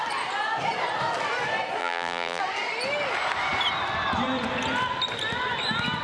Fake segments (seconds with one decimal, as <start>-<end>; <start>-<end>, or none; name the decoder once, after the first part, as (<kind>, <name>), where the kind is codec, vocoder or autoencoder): 1.8-2.4 (vocoder, BigVGAN v2)